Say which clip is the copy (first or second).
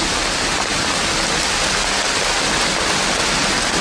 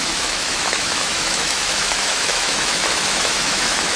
second